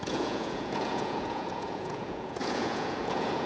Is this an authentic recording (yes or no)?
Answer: no